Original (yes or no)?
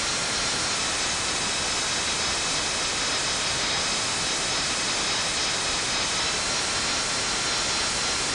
yes